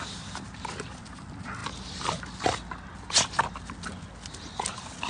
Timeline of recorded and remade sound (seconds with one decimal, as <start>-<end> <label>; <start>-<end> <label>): 0.0-5.1 recorded